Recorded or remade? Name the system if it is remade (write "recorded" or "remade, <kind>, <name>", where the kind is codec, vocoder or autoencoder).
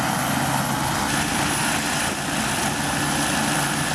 recorded